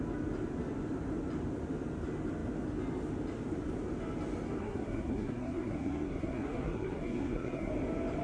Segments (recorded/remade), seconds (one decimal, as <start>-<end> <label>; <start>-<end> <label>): 0.0-4.6 recorded; 4.6-7.7 remade; 7.7-8.2 recorded

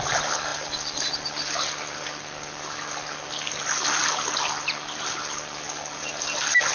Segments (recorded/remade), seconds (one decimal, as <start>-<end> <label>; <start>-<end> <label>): 0.0-6.7 recorded

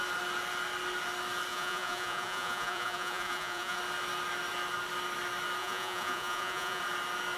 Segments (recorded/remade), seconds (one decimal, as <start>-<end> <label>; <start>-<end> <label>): 0.0-1.5 recorded; 1.5-3.8 remade; 3.8-5.6 recorded; 5.6-6.8 remade; 6.8-7.4 recorded

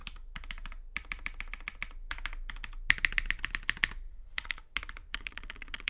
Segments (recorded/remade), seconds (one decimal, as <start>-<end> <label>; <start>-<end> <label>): 0.0-4.1 recorded; 4.1-4.6 remade; 4.6-5.0 recorded; 5.0-5.9 remade